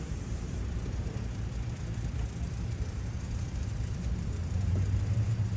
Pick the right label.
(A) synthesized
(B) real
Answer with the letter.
A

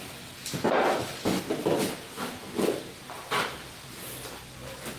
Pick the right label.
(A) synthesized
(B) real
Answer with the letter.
B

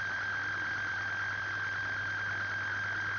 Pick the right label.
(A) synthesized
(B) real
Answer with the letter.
B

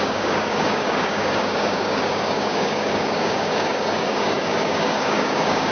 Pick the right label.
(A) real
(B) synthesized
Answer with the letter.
B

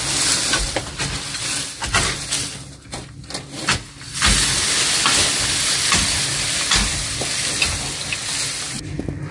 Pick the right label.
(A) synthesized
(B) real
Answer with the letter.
B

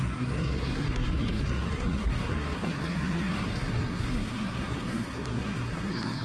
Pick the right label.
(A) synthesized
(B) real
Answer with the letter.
A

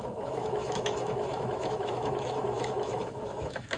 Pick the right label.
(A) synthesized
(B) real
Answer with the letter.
A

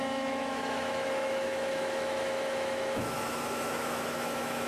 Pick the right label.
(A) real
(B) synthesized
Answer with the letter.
B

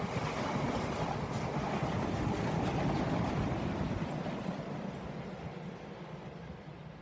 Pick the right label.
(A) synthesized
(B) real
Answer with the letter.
B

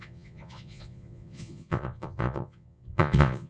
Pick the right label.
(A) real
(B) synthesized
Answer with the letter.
B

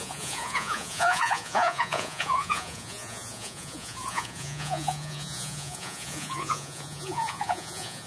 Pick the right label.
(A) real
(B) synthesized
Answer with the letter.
B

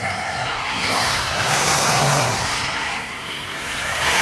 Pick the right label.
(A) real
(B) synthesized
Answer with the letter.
B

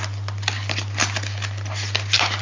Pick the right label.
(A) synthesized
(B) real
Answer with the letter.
B